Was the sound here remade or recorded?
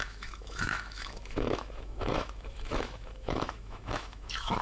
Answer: remade